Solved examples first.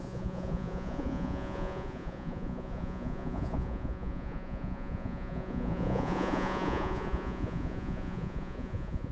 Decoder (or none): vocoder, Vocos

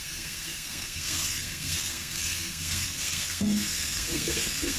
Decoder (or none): codec, SNAC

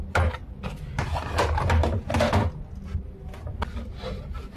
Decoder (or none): none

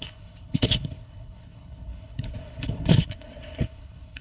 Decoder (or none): codec, HILCodec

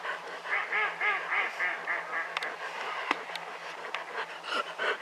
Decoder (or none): none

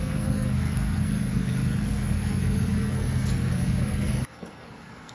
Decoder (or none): codec, SNAC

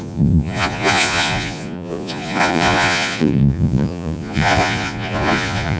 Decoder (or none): vocoder, Vocos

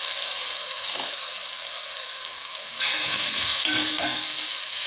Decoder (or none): codec, SNAC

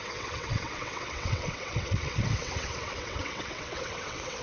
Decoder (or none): vocoder, WaveNeXt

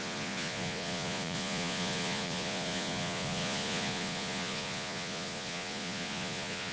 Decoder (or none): vocoder, Vocos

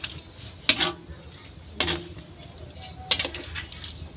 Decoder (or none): none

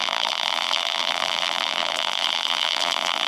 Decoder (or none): vocoder, BigVGAN v2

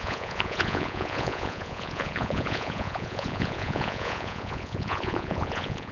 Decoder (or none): vocoder, Vocos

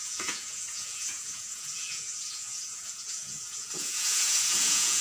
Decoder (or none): vocoder, Vocos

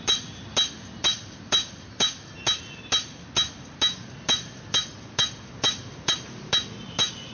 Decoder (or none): none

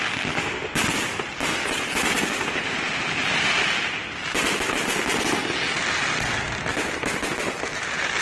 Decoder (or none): none